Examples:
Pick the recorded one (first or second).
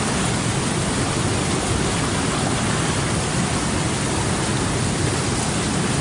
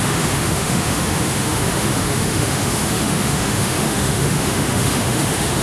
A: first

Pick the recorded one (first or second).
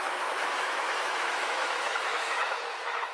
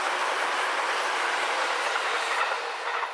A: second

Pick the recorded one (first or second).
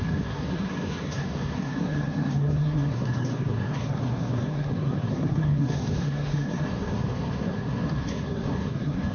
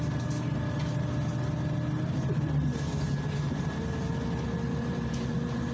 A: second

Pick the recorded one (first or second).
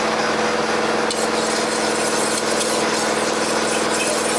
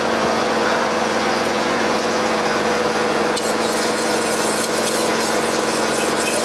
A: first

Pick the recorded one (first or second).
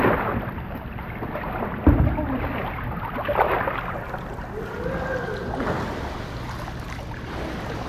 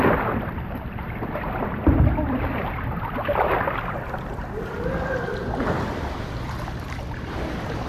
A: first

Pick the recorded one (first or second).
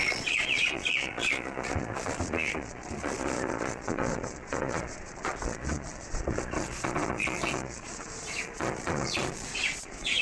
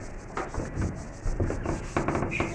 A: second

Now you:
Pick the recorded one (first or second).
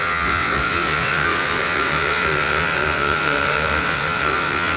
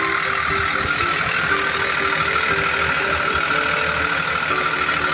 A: second